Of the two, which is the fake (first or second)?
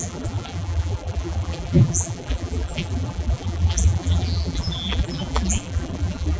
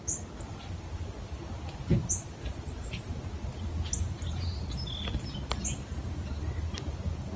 first